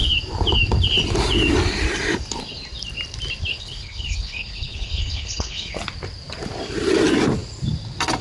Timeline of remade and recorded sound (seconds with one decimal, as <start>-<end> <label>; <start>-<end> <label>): 0.0-3.5 recorded; 3.5-5.8 remade; 5.8-8.2 recorded

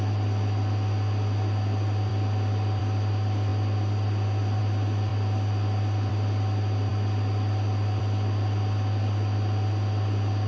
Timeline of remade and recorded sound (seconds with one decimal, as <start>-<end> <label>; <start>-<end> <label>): 0.0-10.5 recorded

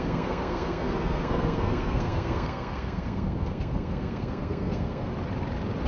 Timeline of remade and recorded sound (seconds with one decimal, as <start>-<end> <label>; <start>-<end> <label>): 0.0-5.1 remade; 5.1-5.9 recorded

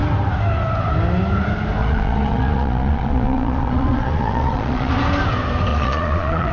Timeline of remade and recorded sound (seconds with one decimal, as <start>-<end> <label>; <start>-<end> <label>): 0.0-1.8 recorded; 1.8-4.9 remade; 4.9-5.7 recorded; 5.7-6.5 remade

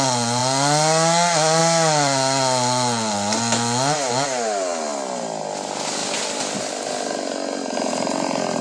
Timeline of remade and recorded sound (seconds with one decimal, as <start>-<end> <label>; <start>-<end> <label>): 0.0-8.6 recorded

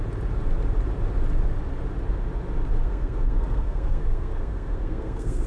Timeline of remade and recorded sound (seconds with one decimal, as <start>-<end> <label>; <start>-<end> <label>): 0.0-2.8 recorded; 2.8-5.5 remade